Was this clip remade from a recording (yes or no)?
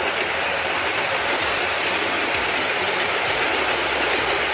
no